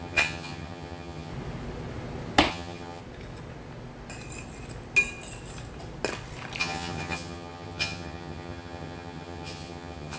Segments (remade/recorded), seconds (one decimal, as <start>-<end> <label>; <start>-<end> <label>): 0.0-1.3 remade; 1.3-2.5 recorded; 2.5-3.0 remade; 3.0-6.6 recorded; 6.6-10.2 remade